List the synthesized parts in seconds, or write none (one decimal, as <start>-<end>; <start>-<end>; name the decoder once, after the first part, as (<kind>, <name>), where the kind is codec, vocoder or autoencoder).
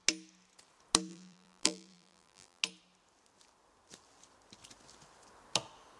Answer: 1.1-2.6 (vocoder, BigVGAN v2)